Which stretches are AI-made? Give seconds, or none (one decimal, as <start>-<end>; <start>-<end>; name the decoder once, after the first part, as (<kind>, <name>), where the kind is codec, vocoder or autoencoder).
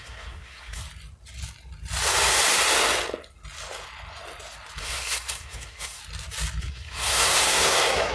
0.0-0.8 (codec, SNAC); 4.8-6.0; 6.6-8.1